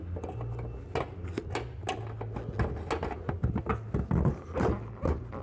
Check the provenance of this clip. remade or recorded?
recorded